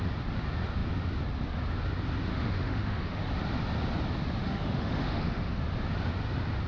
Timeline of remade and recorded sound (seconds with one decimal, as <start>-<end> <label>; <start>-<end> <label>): 0.0-2.3 recorded; 2.3-3.3 remade; 3.3-4.4 recorded; 4.4-5.6 remade; 5.6-6.7 recorded